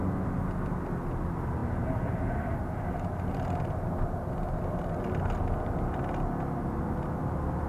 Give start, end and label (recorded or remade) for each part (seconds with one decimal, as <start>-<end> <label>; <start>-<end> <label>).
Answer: 0.0-7.7 recorded